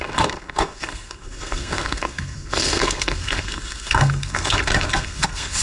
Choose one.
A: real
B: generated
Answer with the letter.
B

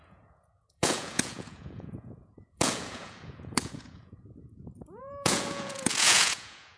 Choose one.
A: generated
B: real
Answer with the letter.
A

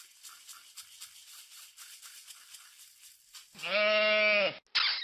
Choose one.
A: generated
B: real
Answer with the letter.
B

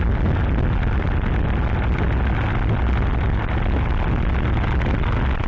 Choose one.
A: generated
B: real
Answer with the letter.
B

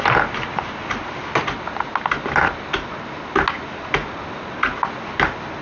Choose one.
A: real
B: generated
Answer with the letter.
A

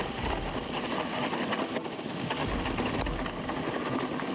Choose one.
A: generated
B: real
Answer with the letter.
B